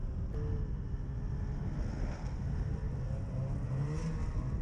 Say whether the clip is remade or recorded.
recorded